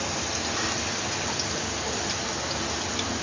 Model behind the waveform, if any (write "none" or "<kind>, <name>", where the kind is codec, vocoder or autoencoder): none